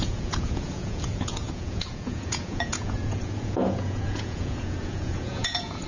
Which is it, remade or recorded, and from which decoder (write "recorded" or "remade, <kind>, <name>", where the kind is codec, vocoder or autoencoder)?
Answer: remade, vocoder, Vocos